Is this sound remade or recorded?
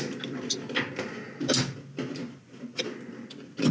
recorded